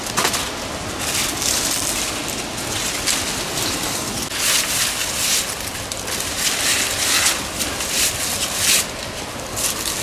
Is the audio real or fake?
real